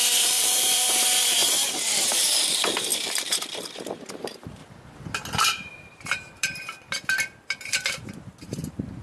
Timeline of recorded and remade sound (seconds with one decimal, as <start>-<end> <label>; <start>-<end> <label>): 0.0-1.4 remade; 1.4-2.0 recorded; 2.0-4.6 remade; 4.6-5.4 recorded; 5.4-9.0 remade